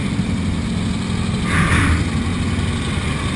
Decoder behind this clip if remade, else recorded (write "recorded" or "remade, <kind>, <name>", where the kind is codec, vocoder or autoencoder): recorded